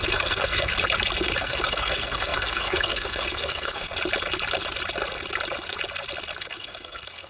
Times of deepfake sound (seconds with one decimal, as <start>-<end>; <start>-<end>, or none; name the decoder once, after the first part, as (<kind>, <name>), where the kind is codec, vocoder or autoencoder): 0.0-0.7 (codec, SNAC); 1.4-3.9; 6.4-7.3